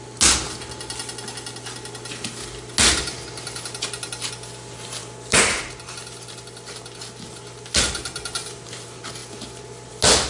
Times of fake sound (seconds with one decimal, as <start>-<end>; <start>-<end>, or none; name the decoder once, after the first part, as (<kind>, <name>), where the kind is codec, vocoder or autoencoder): 5.0-5.7 (vocoder, BigVGAN v2); 9.2-9.9